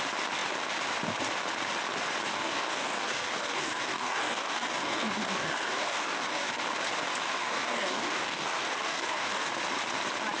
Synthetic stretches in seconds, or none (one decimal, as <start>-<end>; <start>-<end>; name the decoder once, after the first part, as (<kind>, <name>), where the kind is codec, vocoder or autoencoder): 2.3-6.6 (codec, DAC); 7.3-9.5